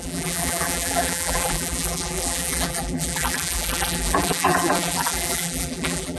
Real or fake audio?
fake